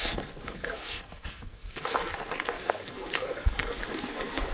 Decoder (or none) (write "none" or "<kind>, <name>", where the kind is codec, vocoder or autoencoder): codec, SNAC